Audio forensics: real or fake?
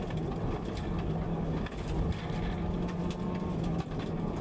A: real